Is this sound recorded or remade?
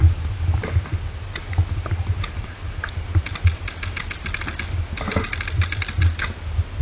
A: recorded